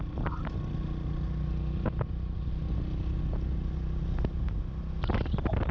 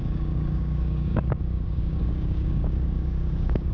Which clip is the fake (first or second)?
second